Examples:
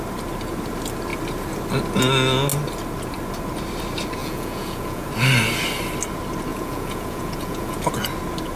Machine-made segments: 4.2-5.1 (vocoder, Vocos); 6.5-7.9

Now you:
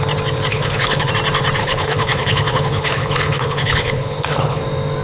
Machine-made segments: 0.5-1.1 (codec, HILCodec); 1.6-4.6

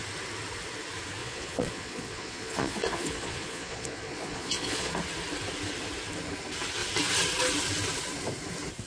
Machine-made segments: 1.2-4.9 (vocoder, Vocos)

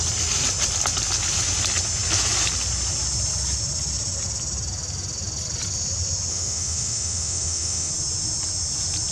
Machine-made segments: 6.3-7.9 (autoencoder, DAC-VAE)